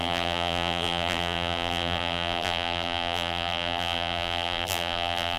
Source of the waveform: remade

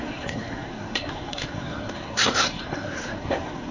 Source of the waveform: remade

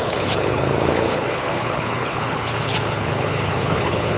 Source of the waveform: remade